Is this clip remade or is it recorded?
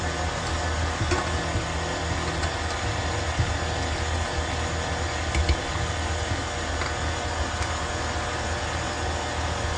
recorded